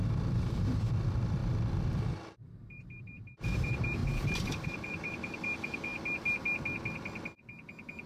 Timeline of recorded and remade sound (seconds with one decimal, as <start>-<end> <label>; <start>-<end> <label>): 0.0-5.9 remade; 5.9-8.1 recorded